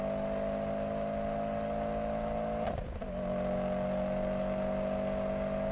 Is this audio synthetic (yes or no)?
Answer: no